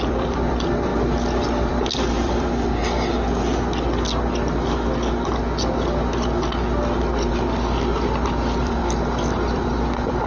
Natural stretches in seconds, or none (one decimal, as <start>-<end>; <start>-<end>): 0.9-1.7; 2.8-7.3; 8.8-9.5